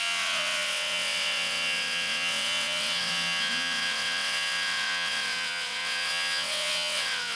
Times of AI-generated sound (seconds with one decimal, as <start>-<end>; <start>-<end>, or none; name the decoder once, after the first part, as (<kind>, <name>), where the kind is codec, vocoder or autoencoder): 0.0-7.4 (vocoder, WaveNeXt)